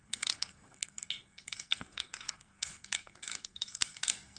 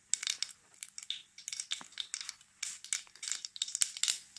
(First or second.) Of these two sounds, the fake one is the first